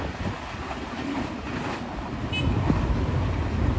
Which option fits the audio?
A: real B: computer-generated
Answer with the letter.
A